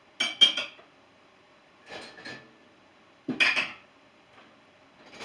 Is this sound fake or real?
real